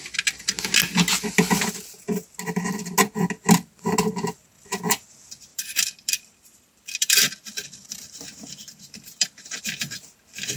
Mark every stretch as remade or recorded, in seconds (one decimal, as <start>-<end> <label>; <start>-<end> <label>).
0.0-5.5 recorded; 5.5-9.6 remade; 9.6-10.6 recorded